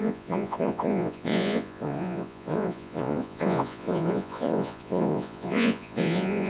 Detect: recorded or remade remade